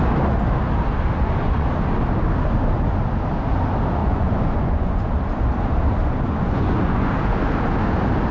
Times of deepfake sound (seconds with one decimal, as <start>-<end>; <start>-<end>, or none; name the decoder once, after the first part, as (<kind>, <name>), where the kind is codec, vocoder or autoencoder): 1.2-1.7 (vocoder, Vocos); 4.0-5.1; 6.0-7.1